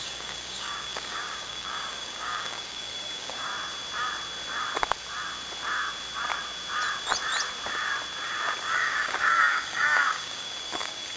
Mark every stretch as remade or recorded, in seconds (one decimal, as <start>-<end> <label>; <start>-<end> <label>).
0.0-3.5 remade; 3.5-8.6 recorded; 8.6-11.2 remade